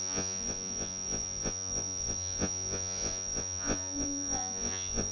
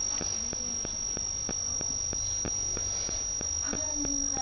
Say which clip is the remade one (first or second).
first